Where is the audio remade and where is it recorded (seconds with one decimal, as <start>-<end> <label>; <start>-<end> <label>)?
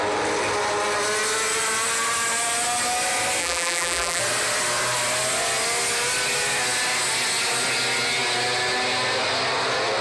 0.0-3.4 recorded; 3.4-4.2 remade; 4.2-10.0 recorded